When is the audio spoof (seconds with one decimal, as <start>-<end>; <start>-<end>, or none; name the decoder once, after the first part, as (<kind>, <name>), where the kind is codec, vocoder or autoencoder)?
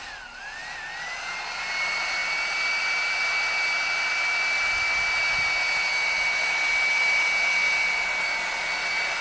none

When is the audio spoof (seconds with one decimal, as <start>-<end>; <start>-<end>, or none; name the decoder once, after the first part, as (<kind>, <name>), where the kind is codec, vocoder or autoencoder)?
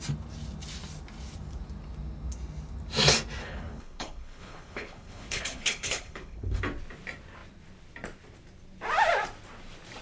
3.4-6.6 (codec, HILCodec)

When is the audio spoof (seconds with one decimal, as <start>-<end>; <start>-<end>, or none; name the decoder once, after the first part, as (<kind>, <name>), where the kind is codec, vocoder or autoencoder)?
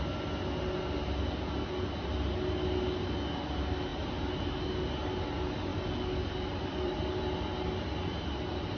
5.7-7.2 (vocoder, BigVGAN v2)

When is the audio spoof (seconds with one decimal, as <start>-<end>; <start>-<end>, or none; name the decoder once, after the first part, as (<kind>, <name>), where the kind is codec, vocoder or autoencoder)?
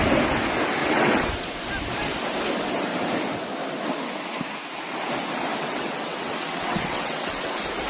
0.8-1.3 (vocoder, WaveNeXt); 5.5-7.5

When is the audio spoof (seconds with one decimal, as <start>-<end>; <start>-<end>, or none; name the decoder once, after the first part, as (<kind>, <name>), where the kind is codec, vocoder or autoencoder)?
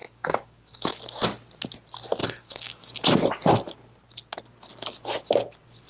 0.0-0.9 (codec, DAC); 2.2-2.9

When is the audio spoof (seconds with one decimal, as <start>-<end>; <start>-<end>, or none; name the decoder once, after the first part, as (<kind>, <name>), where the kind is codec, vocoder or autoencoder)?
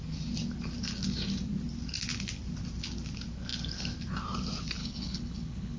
4.8-5.8 (codec, HILCodec)